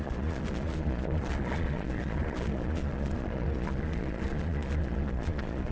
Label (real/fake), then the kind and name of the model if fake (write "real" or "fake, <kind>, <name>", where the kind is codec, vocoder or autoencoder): fake, vocoder, Vocos